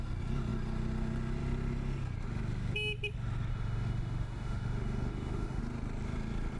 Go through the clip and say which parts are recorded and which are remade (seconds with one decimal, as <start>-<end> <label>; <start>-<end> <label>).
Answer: 0.0-3.5 recorded; 3.5-5.6 remade; 5.6-6.6 recorded